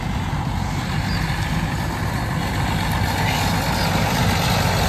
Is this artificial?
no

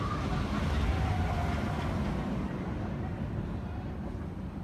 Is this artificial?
no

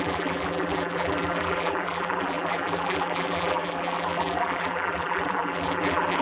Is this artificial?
yes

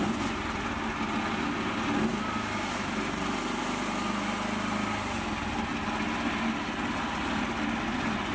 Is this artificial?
no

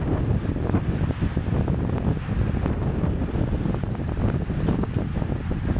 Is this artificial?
no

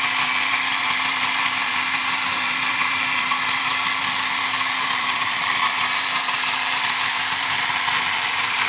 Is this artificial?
yes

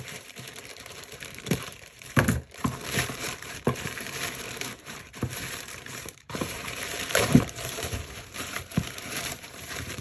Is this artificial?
yes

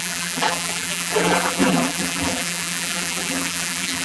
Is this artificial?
yes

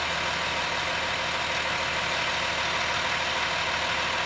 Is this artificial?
no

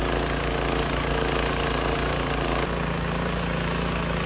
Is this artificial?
no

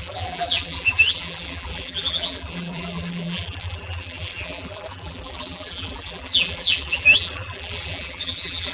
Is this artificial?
yes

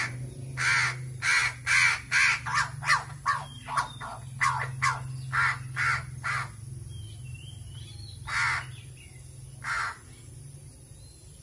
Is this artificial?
no